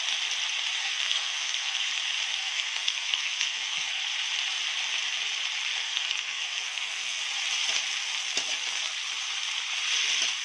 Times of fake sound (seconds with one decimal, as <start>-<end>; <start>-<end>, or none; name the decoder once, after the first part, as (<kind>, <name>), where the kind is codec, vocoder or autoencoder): 0.8-1.8 (codec, SNAC); 2.4-4.0; 5.8-7.2